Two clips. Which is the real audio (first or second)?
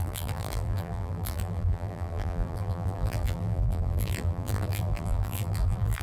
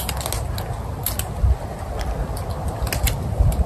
second